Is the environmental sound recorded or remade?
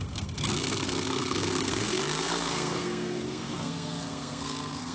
remade